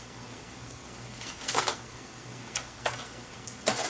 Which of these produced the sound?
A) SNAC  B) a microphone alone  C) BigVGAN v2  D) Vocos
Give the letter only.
A